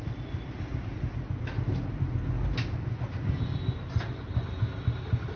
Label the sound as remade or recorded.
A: recorded